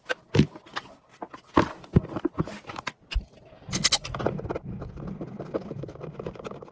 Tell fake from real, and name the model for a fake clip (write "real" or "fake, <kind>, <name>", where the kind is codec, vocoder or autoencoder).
real